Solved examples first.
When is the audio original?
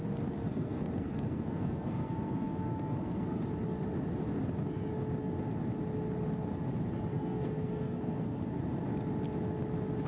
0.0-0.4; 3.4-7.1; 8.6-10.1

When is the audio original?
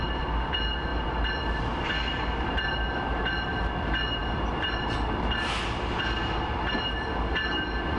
0.0-8.0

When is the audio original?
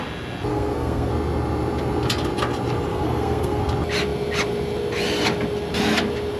0.0-0.5; 1.1-2.9; 3.6-6.4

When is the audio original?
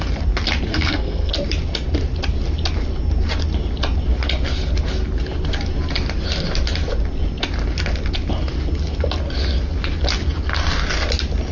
0.0-0.7; 1.3-11.5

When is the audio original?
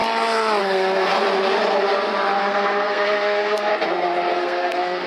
0.0-0.6; 1.1-2.4; 3.7-4.3